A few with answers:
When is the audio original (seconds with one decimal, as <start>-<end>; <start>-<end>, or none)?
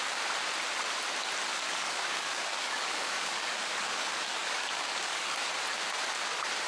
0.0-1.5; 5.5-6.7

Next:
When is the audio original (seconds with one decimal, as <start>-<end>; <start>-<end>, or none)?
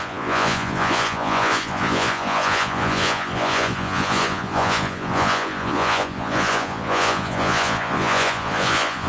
none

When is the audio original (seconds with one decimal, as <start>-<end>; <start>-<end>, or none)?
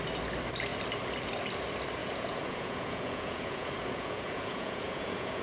0.0-2.0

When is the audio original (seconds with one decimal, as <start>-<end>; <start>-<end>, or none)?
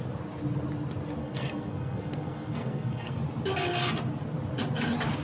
0.0-1.2; 3.2-5.2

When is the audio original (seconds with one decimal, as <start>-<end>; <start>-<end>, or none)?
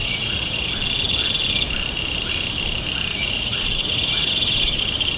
0.7-3.1; 4.8-5.2